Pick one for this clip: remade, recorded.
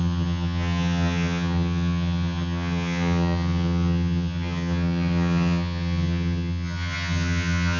remade